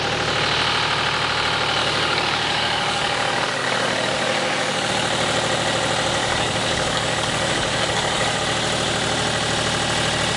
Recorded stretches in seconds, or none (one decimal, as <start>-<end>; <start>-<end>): 0.0-1.8; 4.9-6.2; 8.4-10.4